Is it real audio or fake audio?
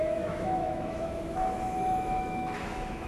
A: fake